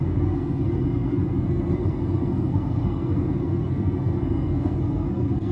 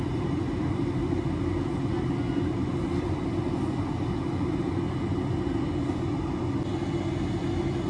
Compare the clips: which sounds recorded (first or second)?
second